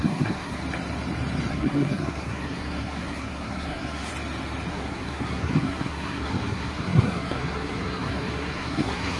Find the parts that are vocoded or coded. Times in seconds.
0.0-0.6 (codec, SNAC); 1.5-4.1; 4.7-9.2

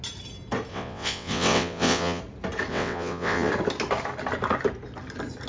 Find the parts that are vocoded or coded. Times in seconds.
0.7-2.2 (vocoder, WaveNeXt); 2.7-3.5